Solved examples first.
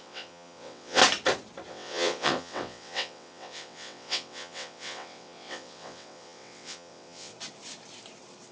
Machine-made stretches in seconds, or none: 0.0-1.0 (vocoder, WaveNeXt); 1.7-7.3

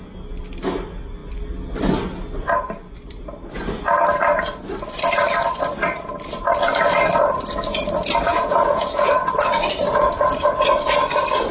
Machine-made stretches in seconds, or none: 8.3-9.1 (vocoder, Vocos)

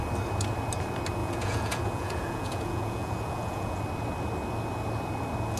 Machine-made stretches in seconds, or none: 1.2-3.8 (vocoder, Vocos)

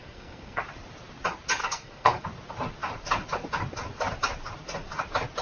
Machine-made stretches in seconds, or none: 0.0-0.6 (codec, SNAC); 1.6-2.2

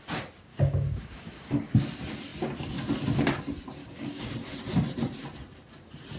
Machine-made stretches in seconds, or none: 0.5-1.7 (codec, DAC); 3.8-4.3

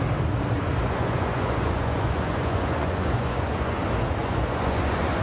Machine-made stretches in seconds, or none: 0.7-3.8 (vocoder, Vocos); 4.2-5.2

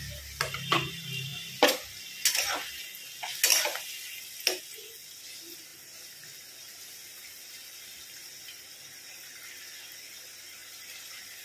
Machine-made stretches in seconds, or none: none